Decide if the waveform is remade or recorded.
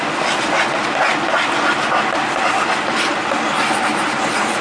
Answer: recorded